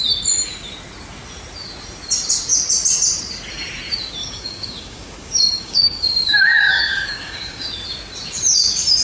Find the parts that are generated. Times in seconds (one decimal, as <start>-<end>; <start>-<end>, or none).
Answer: 4.2-7.7